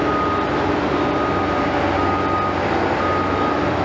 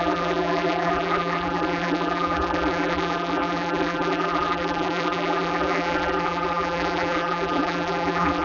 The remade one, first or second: second